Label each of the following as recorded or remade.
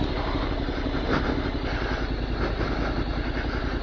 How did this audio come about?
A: recorded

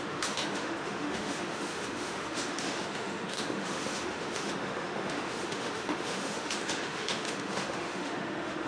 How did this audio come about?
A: remade